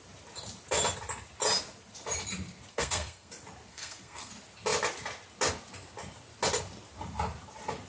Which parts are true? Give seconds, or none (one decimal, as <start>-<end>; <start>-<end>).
0.0-2.7; 3.3-3.7; 4.3-7.9